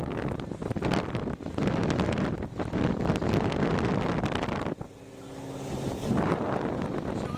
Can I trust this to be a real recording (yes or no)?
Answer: yes